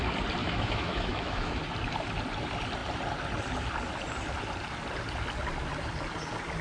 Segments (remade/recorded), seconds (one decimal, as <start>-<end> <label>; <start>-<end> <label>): 0.0-0.4 recorded; 0.4-1.6 remade; 1.6-6.6 recorded